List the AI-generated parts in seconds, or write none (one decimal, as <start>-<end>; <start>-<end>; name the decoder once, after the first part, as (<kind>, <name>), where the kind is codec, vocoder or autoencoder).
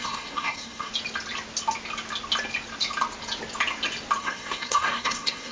0.0-0.9 (codec, SNAC); 4.2-5.5